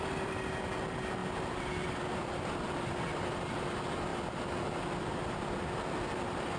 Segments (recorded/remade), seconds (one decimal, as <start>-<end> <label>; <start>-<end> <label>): 0.0-1.2 recorded; 1.2-3.6 remade; 3.6-6.6 recorded